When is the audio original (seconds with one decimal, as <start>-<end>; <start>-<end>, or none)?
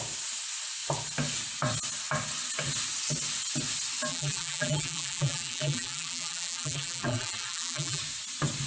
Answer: 0.0-4.1; 8.0-8.7